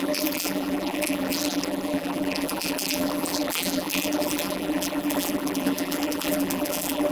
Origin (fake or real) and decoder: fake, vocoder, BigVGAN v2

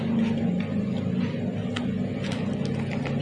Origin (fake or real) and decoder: real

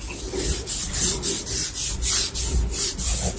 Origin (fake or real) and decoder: real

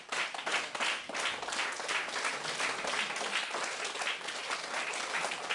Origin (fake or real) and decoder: real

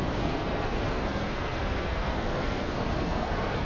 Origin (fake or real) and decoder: fake, codec, SNAC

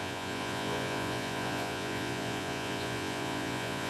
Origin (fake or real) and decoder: fake, vocoder, Vocos